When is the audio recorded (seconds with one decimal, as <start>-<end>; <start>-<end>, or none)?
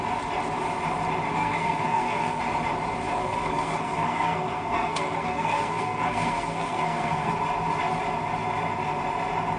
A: 0.0-1.4; 2.4-3.2; 7.3-9.6